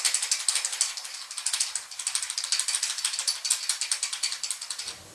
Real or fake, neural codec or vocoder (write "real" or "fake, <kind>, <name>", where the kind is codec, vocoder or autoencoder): real